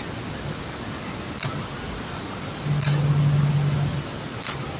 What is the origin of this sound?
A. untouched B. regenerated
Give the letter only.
A